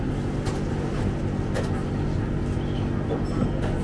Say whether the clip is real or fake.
real